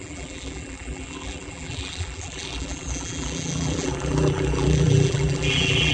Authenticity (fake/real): fake